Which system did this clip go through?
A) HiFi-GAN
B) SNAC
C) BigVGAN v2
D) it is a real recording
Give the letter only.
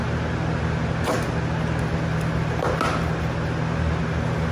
D